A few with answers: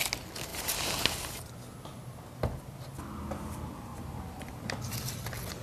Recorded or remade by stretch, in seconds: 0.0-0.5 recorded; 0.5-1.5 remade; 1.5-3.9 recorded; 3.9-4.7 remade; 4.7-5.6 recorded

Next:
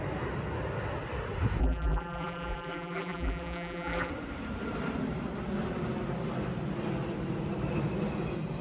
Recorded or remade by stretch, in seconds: 0.0-1.6 recorded; 1.6-4.1 remade; 4.1-8.6 recorded